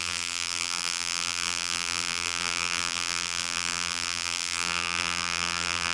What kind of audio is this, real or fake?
fake